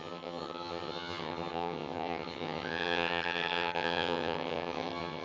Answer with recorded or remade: remade